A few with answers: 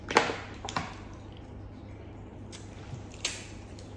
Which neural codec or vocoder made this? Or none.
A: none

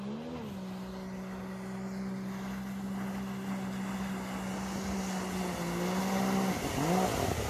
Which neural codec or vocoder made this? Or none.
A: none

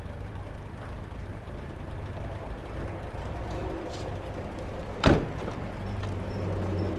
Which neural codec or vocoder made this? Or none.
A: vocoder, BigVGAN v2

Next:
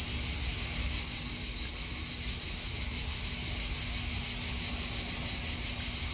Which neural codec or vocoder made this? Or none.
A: none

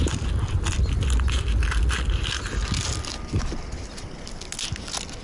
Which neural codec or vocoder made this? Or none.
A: none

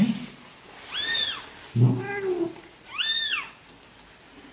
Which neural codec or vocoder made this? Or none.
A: none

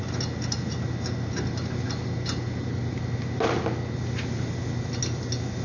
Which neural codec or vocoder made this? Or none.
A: none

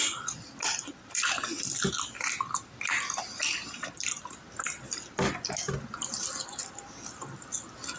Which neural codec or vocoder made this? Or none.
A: none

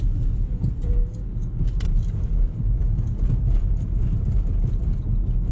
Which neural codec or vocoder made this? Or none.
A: none